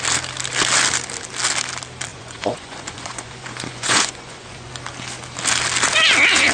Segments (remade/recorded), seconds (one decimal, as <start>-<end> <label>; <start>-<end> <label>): 0.0-2.1 recorded; 2.1-4.7 remade; 4.7-6.5 recorded